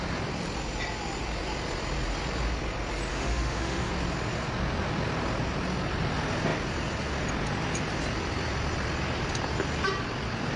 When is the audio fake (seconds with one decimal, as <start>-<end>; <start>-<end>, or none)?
3.1-3.9